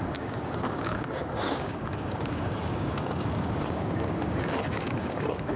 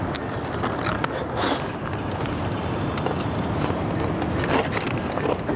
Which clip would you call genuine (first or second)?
second